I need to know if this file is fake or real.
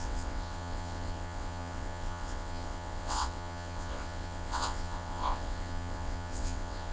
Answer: fake